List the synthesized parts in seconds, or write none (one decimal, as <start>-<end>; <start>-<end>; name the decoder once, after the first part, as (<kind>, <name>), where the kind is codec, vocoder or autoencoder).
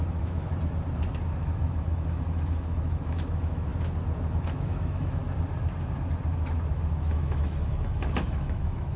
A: 0.0-0.5 (autoencoder, DAC-VAE); 1.4-3.7; 4.3-5.2; 6.7-9.0